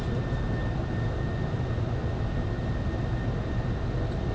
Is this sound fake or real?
real